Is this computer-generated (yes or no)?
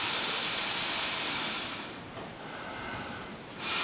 yes